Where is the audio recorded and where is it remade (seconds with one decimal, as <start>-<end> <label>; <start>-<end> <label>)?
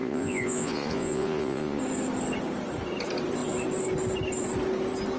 0.0-1.8 remade; 1.8-5.2 recorded